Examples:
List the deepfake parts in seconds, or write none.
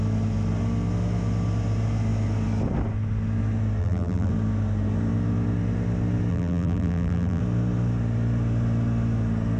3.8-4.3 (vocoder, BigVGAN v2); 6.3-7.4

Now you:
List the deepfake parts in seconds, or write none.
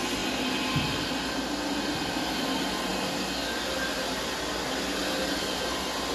none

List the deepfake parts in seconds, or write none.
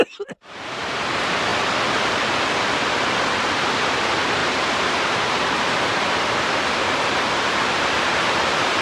4.4-8.8 (vocoder, BigVGAN v2)